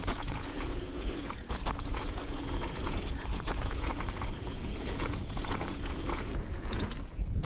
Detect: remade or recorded remade